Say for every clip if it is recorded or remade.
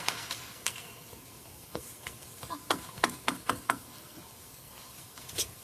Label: remade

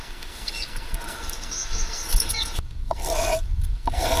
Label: remade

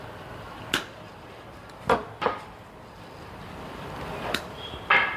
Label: recorded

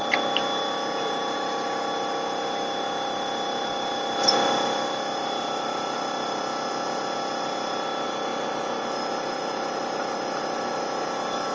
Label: recorded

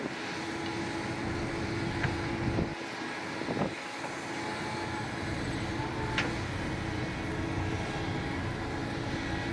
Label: recorded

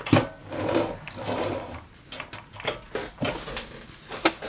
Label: recorded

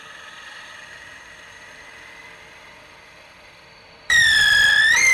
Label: remade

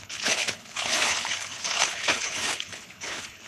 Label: remade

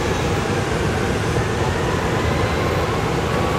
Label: recorded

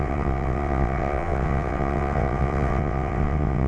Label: remade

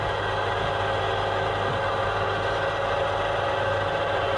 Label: recorded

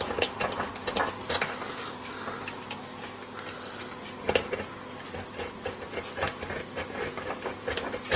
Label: recorded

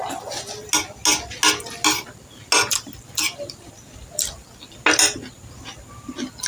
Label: recorded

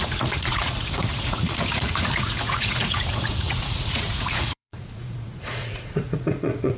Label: remade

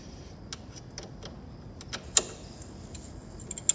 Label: recorded